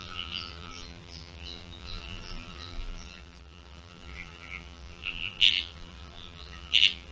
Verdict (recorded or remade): remade